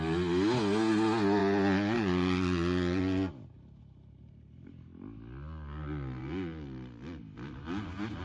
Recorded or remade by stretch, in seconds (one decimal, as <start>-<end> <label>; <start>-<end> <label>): 0.0-8.2 recorded